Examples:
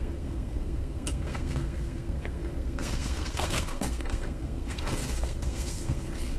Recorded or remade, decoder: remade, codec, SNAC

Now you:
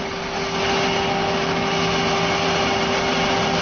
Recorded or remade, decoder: recorded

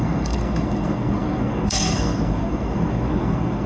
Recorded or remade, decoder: remade, codec, SNAC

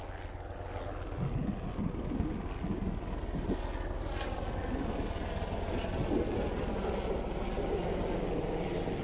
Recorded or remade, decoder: recorded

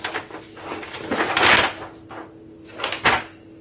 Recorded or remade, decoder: recorded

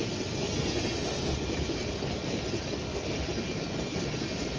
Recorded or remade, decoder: recorded